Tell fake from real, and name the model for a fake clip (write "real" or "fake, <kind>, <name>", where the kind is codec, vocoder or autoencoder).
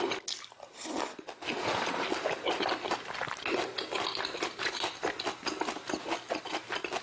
real